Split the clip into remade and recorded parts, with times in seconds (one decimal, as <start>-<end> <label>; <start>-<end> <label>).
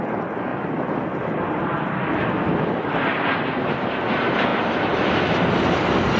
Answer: 0.0-6.2 recorded